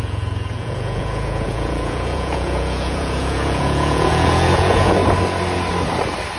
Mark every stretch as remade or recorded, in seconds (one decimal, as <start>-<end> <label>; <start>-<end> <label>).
0.0-5.0 remade; 5.0-6.4 recorded